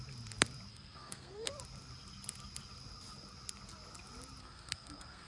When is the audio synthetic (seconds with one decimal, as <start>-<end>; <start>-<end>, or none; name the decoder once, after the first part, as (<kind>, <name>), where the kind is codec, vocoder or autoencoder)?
0.7-1.5 (codec, SNAC); 4.4-5.3